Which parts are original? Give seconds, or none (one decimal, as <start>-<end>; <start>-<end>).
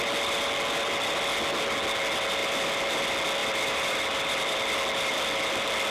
0.0-2.4; 3.0-3.4; 4.8-5.9